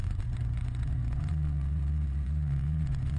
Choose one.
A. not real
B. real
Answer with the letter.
A